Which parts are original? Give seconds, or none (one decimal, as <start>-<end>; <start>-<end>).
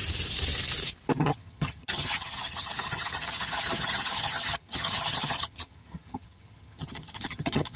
0.0-1.2